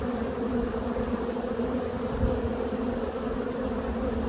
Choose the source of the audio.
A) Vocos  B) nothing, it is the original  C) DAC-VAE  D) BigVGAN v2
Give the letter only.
B